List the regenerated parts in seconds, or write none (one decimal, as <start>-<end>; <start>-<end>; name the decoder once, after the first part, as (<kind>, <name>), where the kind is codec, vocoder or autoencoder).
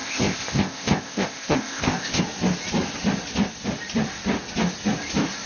0.0-2.2 (codec, ZipCodec)